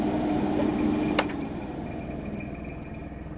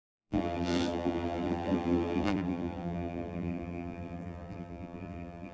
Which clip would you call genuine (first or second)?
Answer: first